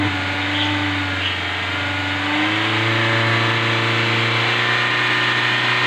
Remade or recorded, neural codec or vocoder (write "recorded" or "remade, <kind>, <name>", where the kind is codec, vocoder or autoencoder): recorded